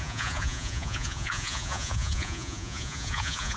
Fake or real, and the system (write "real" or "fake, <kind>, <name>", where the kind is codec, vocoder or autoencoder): fake, vocoder, Vocos